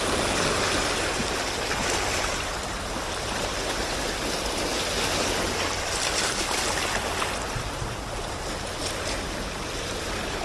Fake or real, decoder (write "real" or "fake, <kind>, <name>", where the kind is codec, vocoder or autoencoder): real